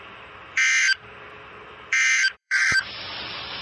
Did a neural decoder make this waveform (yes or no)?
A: yes